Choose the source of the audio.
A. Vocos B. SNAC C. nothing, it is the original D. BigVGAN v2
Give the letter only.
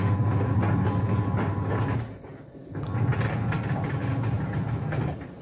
C